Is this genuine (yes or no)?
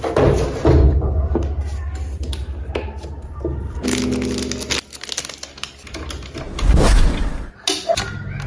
yes